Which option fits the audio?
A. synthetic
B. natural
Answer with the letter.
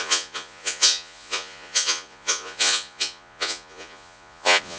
A